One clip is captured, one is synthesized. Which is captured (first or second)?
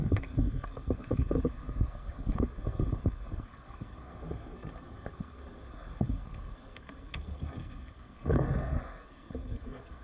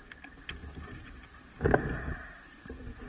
second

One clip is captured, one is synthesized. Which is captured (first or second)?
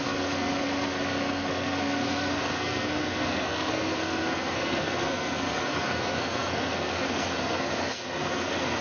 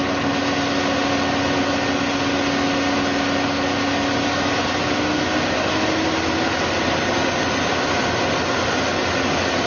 second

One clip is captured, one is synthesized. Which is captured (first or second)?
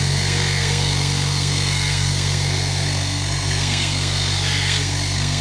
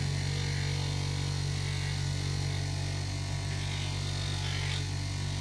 second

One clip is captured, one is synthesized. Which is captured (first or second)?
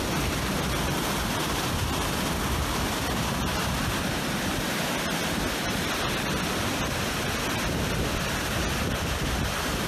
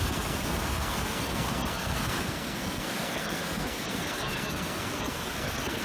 first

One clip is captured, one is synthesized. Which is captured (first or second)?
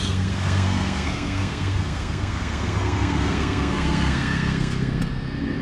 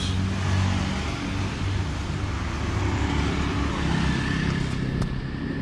second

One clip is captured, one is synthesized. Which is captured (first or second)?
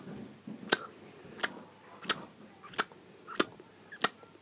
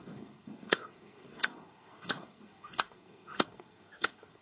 first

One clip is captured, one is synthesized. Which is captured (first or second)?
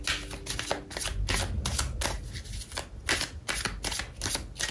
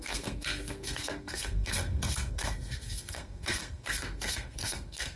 first